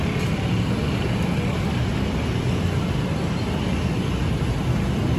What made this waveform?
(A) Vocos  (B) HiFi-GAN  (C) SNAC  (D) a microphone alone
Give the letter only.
D